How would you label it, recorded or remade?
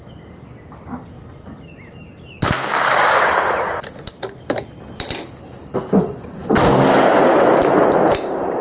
recorded